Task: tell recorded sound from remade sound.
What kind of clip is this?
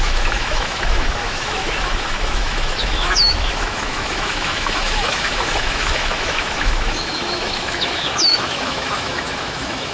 remade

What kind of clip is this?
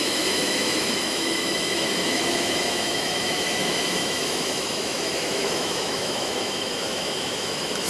remade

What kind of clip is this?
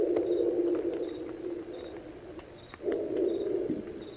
recorded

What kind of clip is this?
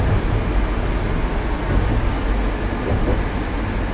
recorded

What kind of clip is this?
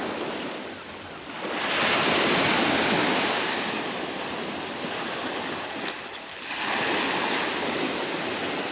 recorded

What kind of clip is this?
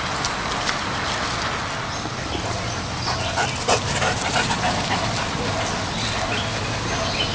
recorded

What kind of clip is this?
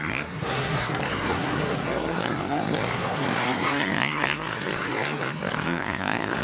remade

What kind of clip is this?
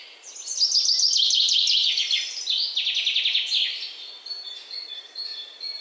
recorded